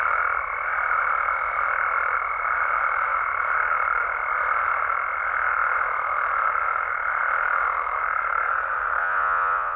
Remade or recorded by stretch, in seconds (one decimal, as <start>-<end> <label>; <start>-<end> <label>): 0.0-9.0 recorded; 9.0-9.8 remade